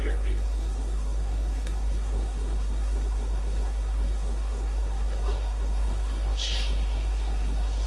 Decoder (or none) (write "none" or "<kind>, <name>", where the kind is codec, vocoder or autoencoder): codec, SNAC